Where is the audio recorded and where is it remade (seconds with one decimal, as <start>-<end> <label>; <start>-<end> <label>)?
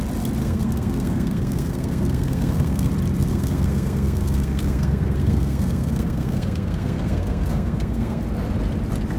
0.0-0.4 recorded; 0.4-2.9 remade; 2.9-3.3 recorded; 3.3-8.2 remade; 8.2-9.2 recorded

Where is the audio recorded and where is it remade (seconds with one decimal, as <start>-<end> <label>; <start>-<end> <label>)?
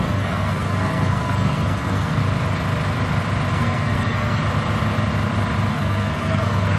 0.0-2.2 remade; 2.2-3.5 recorded; 3.5-4.4 remade; 4.4-5.7 recorded; 5.7-6.8 remade